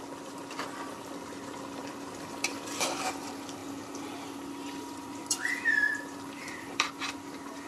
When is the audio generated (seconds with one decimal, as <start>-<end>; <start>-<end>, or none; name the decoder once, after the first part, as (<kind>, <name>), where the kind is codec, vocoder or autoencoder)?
1.8-3.1 (vocoder, BigVGAN v2); 3.6-7.7